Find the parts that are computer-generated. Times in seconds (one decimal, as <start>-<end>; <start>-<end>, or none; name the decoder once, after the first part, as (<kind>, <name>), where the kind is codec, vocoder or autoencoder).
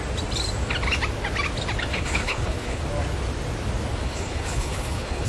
1.9-2.8 (codec, HILCodec); 4.0-5.3